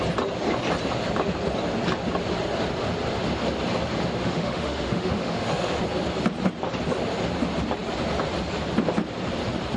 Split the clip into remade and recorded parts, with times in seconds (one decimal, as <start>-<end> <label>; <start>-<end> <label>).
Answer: 0.0-4.2 recorded; 4.2-5.8 remade; 5.8-9.8 recorded